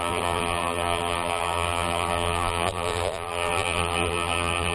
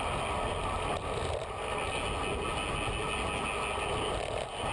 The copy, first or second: first